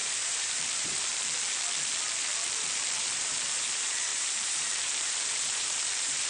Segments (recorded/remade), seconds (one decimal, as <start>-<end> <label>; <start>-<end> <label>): 0.0-1.1 remade; 1.1-3.0 recorded; 3.0-6.3 remade